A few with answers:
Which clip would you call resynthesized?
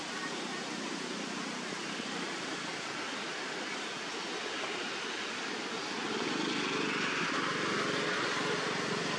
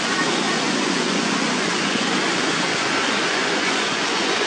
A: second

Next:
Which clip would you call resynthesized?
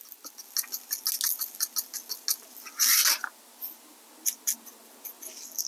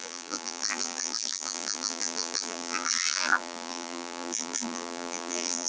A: second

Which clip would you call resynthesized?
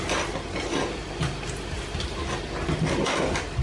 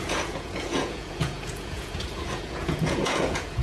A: second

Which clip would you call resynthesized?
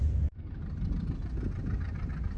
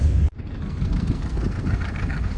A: second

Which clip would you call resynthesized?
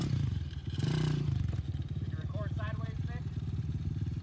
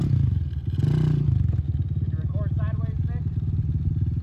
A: first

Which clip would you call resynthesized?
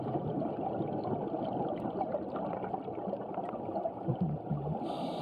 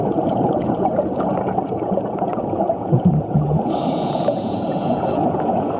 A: second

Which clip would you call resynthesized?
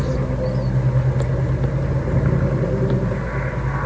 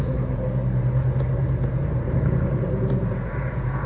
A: second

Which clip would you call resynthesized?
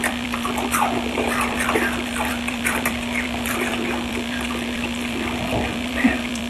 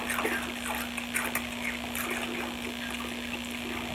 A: first